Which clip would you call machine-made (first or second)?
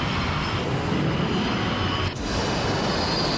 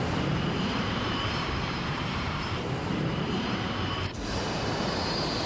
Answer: second